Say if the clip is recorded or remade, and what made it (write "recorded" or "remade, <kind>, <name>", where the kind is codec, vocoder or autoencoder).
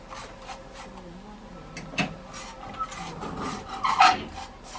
recorded